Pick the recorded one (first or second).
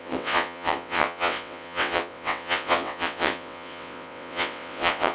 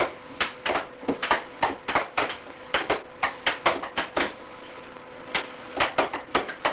second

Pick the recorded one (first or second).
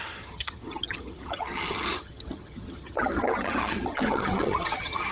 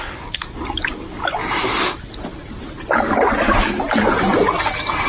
second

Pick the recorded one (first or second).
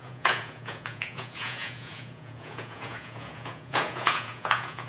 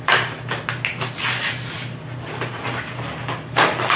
second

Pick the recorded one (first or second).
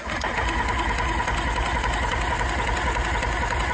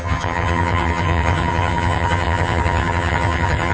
first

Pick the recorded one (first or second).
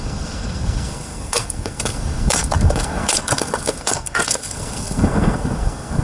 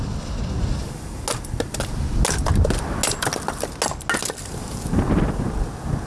second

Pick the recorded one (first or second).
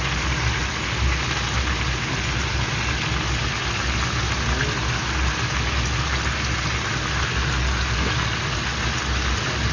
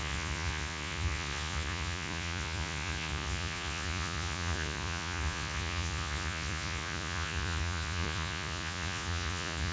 first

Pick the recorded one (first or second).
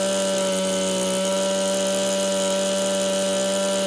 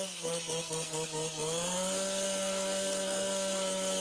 first